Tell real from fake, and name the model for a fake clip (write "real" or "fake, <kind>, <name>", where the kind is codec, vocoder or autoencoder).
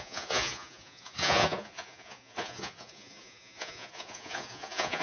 fake, vocoder, Vocos